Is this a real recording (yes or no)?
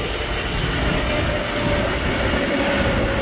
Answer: yes